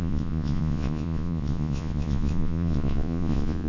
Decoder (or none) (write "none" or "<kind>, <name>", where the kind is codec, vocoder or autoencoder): vocoder, Vocos